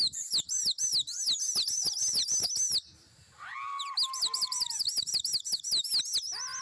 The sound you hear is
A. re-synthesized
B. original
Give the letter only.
B